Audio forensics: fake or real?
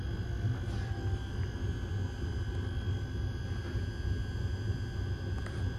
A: real